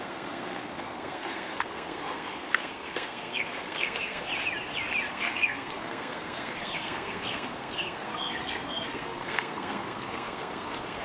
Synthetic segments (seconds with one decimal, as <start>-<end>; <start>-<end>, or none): 0.0-4.3; 5.1-11.0